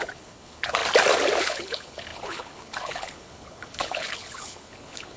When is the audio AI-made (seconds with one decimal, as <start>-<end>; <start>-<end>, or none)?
0.0-0.8; 1.4-5.2